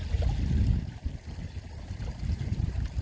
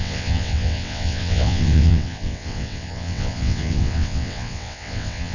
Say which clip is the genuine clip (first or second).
first